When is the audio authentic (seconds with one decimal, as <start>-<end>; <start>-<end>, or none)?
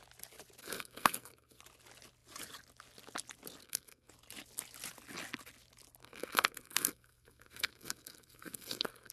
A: 0.0-0.6; 1.6-3.6; 4.1-6.0